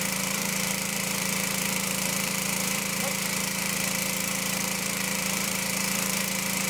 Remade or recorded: remade